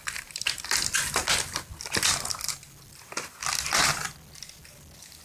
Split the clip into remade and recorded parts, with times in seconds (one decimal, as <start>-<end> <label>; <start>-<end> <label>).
0.0-5.2 recorded